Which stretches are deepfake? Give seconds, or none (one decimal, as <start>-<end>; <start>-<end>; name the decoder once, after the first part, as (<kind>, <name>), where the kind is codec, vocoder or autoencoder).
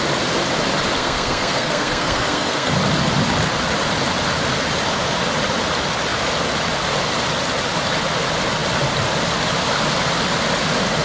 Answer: 1.0-2.7 (codec, SNAC)